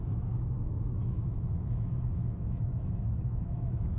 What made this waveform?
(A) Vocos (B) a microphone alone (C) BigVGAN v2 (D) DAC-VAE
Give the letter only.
D